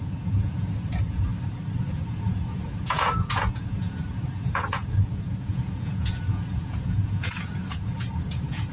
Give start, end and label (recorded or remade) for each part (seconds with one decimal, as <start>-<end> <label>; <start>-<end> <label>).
0.0-1.3 remade; 1.3-1.8 recorded; 1.8-8.7 remade